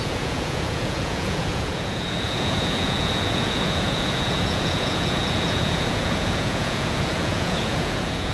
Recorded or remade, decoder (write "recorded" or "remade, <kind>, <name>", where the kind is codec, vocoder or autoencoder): remade, vocoder, Vocos